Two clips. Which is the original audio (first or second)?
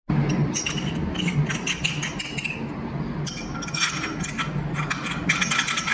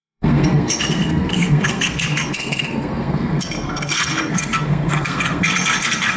first